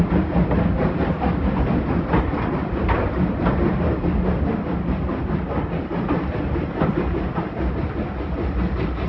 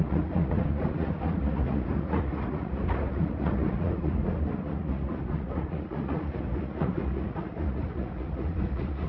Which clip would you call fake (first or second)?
second